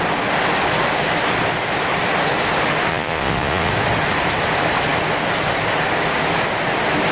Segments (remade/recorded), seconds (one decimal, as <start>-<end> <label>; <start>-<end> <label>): 0.0-2.9 recorded; 2.9-3.7 remade; 3.7-7.1 recorded